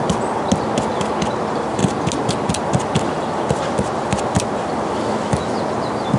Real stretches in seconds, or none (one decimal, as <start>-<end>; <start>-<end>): 0.0-6.2